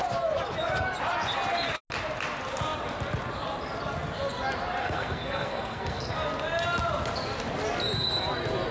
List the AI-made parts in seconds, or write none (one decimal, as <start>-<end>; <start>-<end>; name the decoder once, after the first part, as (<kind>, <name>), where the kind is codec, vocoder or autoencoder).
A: 4.8-6.1 (codec, SNAC)